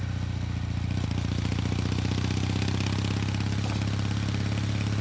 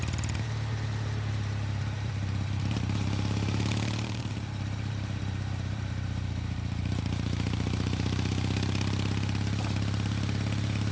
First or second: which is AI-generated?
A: second